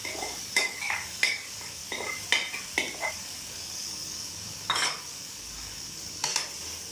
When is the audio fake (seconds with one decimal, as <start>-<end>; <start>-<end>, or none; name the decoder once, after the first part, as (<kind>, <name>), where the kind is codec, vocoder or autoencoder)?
0.0-1.8 (codec, DAC); 3.1-6.3